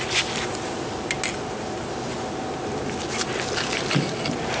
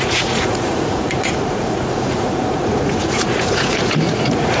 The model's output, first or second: second